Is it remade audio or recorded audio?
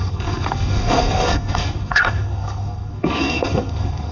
remade